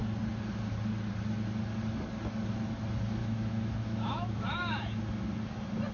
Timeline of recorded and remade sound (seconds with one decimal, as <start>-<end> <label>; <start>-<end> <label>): 0.0-3.2 recorded; 3.2-5.0 remade; 5.0-5.9 recorded